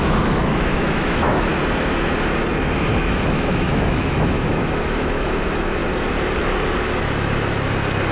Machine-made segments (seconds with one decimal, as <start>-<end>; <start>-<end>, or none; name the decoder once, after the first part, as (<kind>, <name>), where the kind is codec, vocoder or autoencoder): 0.0-1.5 (autoencoder, DAC-VAE); 3.0-5.8